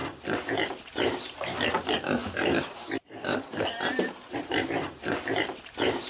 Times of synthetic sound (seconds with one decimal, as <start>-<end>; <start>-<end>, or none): 0.9-6.1